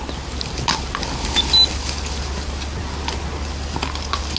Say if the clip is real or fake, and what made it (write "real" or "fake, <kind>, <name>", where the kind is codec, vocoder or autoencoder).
real